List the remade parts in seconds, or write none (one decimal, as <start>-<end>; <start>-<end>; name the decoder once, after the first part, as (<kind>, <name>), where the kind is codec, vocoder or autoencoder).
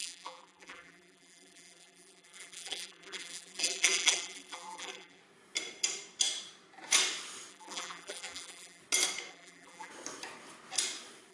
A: 0.0-5.2 (vocoder, BigVGAN v2); 7.5-8.8; 9.3-9.9